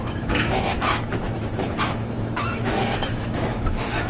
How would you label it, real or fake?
fake